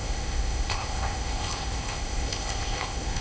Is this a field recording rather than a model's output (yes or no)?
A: no